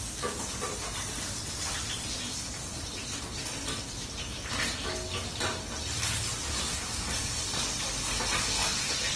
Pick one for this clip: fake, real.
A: real